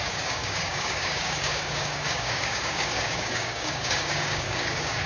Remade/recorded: remade